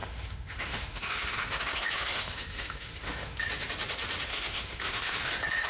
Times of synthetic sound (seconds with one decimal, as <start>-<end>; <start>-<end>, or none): 0.0-3.4; 4.3-5.3